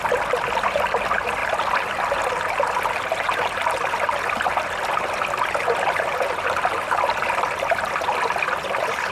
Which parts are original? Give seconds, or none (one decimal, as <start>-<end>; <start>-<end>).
1.4-5.6